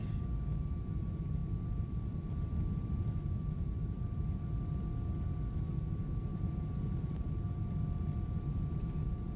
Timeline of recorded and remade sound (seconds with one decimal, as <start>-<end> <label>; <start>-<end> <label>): 0.0-1.4 recorded; 1.4-4.6 remade; 4.6-6.3 recorded; 6.3-7.4 remade; 7.4-9.4 recorded